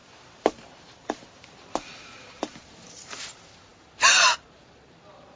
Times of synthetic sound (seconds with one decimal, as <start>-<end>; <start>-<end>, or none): 0.0-3.2